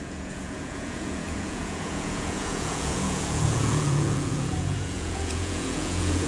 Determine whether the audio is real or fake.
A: fake